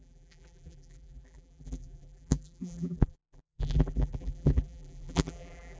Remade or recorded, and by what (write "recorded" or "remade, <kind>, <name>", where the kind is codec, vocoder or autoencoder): remade, vocoder, BigVGAN v2